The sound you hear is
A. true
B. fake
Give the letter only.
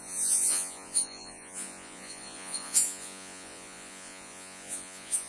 B